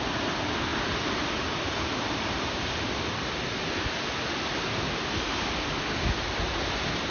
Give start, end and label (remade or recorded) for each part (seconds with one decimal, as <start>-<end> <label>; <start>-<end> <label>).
0.0-0.7 recorded; 0.7-3.0 remade; 3.0-7.1 recorded